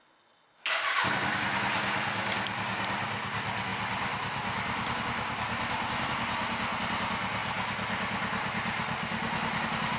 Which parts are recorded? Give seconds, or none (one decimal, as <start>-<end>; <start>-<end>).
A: 0.0-10.0